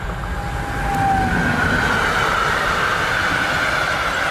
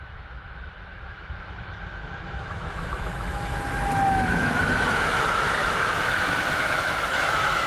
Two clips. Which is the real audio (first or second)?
first